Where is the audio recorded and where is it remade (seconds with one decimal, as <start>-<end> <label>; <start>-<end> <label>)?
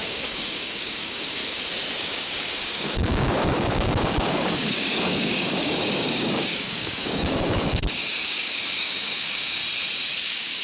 0.0-1.4 remade; 1.4-2.0 recorded; 2.0-9.6 remade; 9.6-10.2 recorded; 10.2-10.6 remade